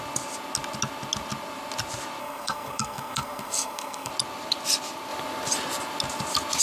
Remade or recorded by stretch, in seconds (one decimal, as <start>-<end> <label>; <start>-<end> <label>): 0.0-2.2 recorded; 2.2-4.1 remade; 4.1-6.6 recorded